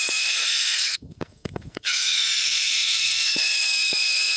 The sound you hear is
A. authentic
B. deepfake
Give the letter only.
B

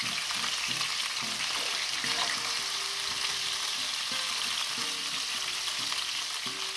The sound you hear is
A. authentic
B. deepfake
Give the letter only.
A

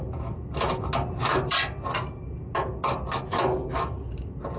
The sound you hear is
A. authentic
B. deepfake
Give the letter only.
A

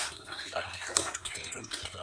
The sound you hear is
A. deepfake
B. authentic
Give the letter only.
A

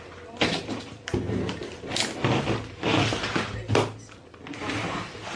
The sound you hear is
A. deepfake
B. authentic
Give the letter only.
B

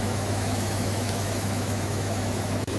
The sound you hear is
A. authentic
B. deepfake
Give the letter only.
B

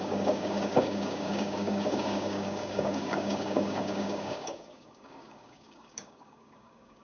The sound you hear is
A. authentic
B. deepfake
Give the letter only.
B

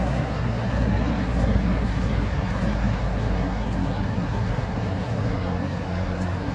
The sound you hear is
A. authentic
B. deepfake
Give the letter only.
B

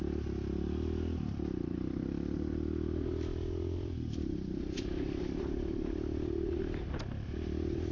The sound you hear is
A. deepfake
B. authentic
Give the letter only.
A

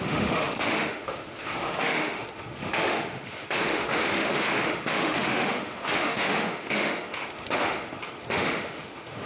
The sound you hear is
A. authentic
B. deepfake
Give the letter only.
B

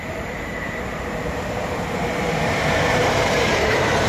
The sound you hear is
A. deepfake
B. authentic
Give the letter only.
A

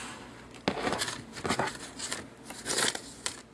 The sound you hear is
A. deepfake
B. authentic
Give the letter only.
B